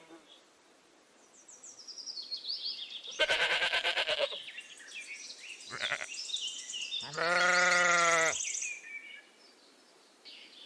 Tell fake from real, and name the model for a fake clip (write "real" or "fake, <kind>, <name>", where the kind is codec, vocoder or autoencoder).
real